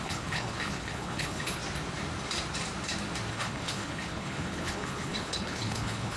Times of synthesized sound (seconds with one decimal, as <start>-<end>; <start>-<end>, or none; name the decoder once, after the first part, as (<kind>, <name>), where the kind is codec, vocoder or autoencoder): 0.0-1.6 (codec, HILCodec); 3.3-6.2

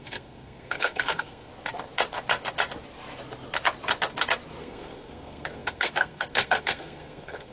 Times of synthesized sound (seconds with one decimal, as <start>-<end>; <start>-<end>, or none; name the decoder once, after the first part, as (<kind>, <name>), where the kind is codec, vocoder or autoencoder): 0.0-1.5 (codec, SNAC); 4.6-7.5